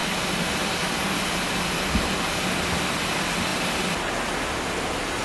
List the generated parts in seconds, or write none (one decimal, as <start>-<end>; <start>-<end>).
none